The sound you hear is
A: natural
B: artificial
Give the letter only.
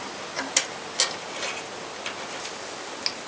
A